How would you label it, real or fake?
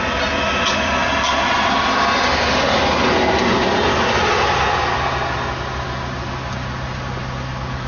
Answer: real